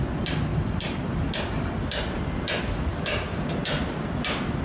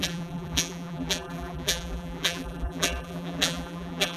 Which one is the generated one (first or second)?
second